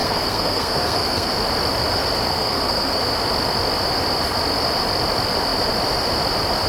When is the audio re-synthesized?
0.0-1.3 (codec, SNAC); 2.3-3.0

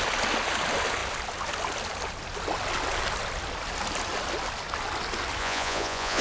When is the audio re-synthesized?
5.4-6.2 (vocoder, Vocos)

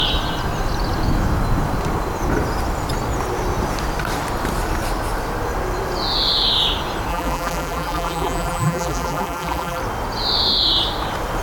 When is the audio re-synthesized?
7.1-9.8 (vocoder, BigVGAN v2)

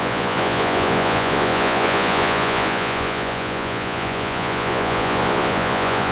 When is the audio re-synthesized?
0.0-6.1 (vocoder, Vocos)